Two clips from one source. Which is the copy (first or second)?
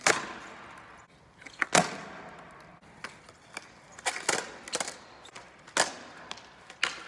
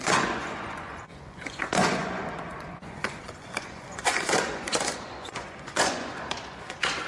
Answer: second